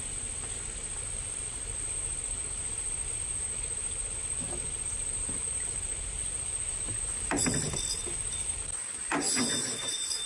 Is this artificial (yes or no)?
no